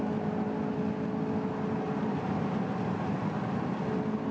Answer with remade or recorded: recorded